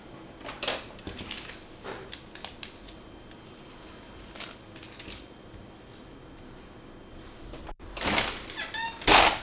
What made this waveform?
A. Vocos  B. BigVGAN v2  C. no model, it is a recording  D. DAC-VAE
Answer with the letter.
C